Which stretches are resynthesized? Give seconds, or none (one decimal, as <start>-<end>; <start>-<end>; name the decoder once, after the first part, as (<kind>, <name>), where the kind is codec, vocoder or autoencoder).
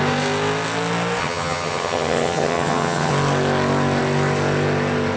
1.2-3.1 (vocoder, HiFi-GAN)